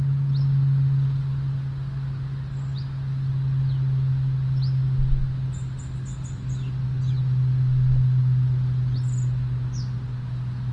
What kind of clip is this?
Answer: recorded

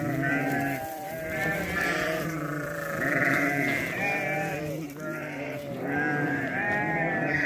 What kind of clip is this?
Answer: remade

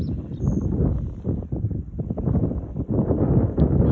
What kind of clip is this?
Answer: recorded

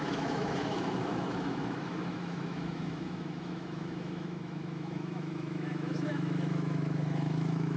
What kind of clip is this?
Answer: remade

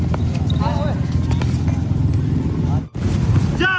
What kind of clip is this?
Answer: recorded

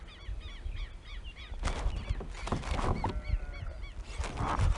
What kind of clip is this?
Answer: recorded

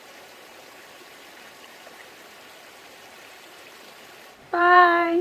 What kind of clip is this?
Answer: remade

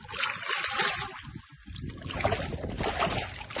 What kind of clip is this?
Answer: recorded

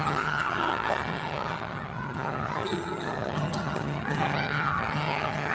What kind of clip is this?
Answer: remade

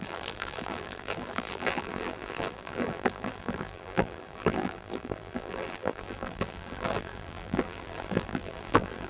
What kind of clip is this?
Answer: remade